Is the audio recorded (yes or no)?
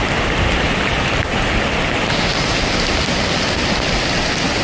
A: yes